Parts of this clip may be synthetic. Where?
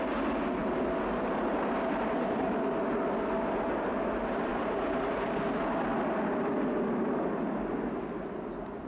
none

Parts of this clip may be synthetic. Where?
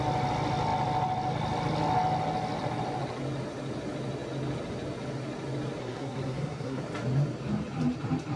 5.8-6.8 (codec, SNAC)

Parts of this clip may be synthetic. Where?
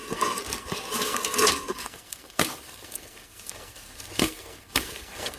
0.0-5.4 (codec, SNAC)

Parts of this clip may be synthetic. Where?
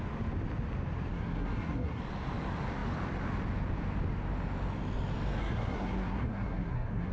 1.1-2.0 (codec, SNAC); 5.4-7.1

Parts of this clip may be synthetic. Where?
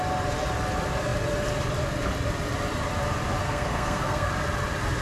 3.4-4.3 (codec, SNAC)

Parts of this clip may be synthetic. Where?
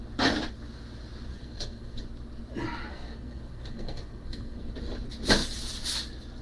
1.3-2.0 (codec, SNAC); 2.9-4.7